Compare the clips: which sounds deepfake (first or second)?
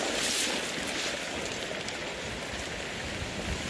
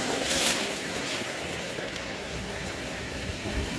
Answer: second